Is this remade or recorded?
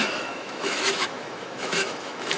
remade